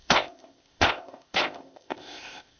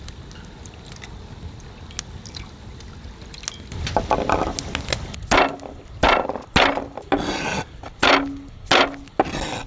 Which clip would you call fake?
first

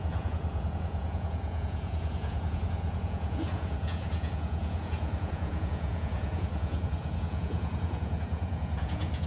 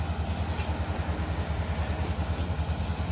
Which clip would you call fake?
first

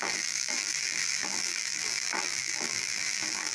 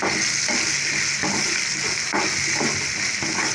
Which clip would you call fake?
first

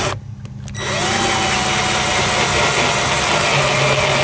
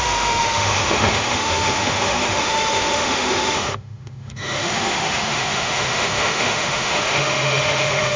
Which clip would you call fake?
second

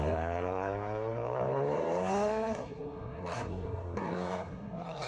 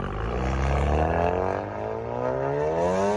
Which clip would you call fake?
first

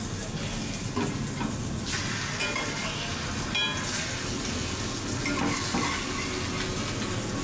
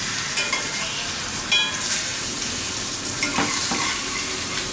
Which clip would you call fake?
second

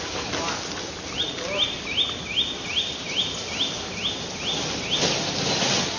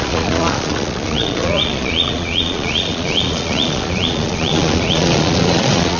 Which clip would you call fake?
second